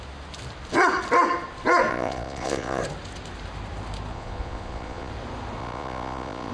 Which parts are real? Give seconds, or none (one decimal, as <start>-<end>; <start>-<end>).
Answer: 0.0-1.9; 2.8-4.1; 5.1-5.6